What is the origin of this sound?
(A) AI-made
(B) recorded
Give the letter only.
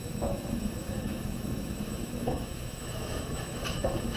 A